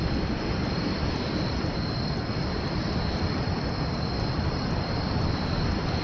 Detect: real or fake fake